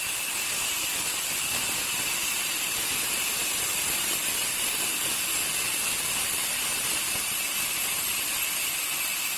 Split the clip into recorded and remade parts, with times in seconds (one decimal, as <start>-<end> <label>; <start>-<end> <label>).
0.0-2.2 recorded; 2.2-2.8 remade; 2.8-3.4 recorded; 3.4-4.1 remade; 4.1-9.4 recorded